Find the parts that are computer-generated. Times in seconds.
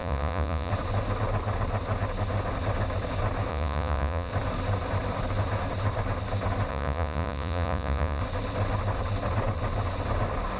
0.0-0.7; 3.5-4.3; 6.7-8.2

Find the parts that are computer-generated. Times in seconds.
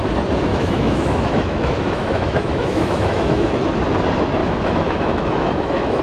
0.5-3.6; 4.4-6.0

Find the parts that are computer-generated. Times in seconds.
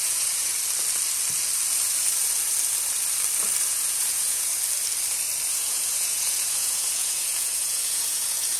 0.0-0.5; 3.7-4.5; 5.5-8.6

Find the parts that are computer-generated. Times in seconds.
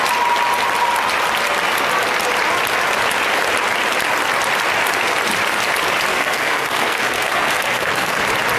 6.1-8.2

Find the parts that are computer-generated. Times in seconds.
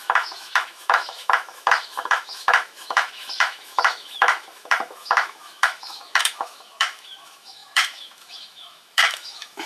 0.0-9.7